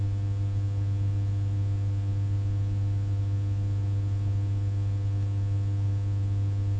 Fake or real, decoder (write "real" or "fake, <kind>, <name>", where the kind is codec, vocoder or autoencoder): real